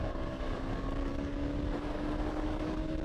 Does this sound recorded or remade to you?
remade